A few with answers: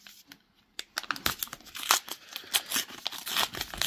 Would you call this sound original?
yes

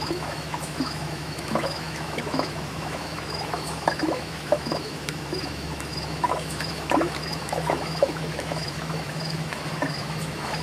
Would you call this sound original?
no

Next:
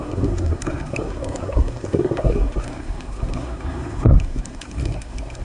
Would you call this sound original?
no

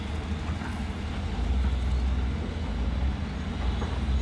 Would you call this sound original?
yes